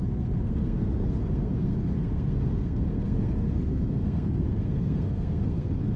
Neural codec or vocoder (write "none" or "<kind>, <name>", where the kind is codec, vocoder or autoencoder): codec, SNAC